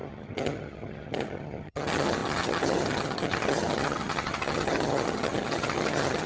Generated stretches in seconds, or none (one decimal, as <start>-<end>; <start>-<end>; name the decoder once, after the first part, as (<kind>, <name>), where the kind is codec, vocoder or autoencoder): 0.0-6.3 (vocoder, HiFi-GAN)

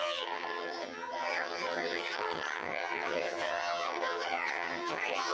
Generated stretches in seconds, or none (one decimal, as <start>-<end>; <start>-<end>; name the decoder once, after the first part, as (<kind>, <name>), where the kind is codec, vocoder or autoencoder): 0.0-5.3 (vocoder, HiFi-GAN)